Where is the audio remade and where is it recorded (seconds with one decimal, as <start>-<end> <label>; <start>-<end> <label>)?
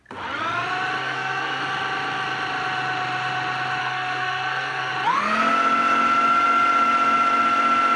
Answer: 0.0-1.0 recorded; 1.0-1.6 remade; 1.6-3.8 recorded; 3.8-4.9 remade; 4.9-8.0 recorded